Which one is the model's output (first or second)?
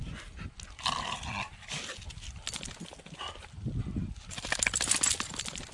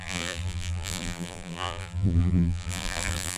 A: second